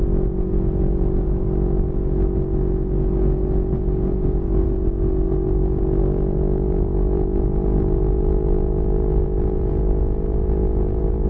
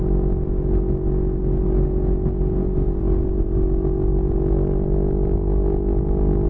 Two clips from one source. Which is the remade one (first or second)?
first